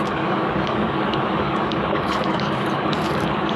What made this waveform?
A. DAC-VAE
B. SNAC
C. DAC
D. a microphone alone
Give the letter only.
C